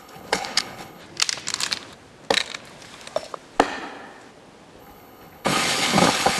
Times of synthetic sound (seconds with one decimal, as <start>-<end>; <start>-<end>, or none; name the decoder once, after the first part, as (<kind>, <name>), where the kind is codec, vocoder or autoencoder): 0.0-1.0 (codec, HILCodec); 4.8-6.4